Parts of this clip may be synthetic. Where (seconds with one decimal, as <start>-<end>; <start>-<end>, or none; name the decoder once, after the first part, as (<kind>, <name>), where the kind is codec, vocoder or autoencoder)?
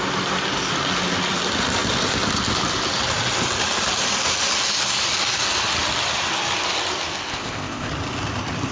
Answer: 7.3-7.9 (codec, ZipCodec)